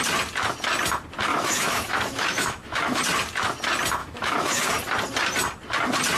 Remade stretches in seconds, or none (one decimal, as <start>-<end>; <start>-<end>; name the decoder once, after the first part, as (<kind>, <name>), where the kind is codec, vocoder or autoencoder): 1.3-3.0 (autoencoder, DAC-VAE); 4.0-4.7